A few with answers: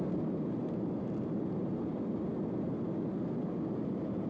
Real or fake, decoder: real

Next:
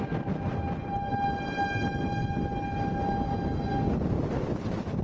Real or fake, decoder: real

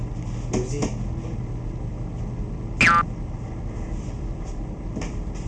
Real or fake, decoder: real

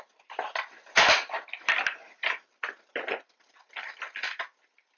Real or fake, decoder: real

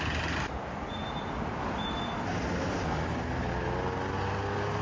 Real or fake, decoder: real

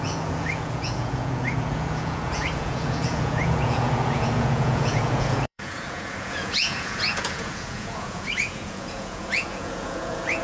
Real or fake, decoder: fake, vocoder, Vocos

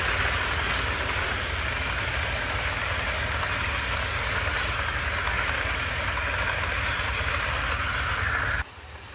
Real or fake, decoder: real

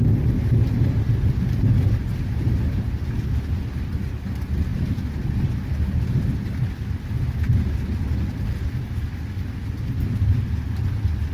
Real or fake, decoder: real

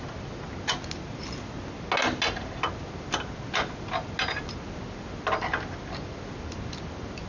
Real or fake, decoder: real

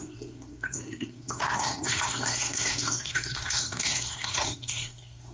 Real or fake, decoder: fake, codec, SNAC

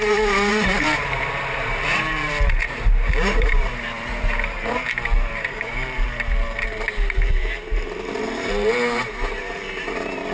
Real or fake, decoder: fake, vocoder, BigVGAN v2